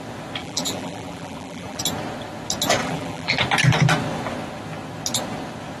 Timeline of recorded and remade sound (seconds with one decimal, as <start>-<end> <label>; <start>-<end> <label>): 0.0-0.4 recorded; 0.4-1.8 remade; 1.8-2.8 recorded; 2.8-3.4 remade; 3.4-5.8 recorded